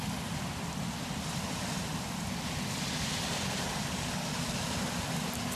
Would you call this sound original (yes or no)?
yes